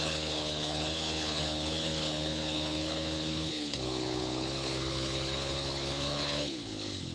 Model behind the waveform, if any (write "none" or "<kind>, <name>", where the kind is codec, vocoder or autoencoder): codec, HILCodec